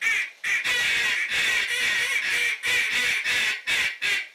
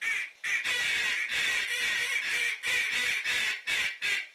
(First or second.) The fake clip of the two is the second